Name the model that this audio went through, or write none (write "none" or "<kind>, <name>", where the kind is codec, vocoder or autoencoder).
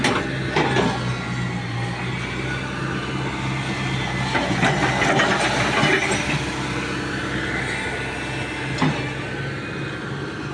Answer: none